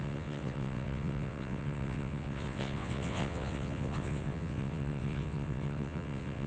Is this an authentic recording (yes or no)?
no